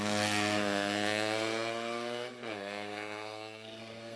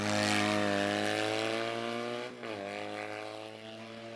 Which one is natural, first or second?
second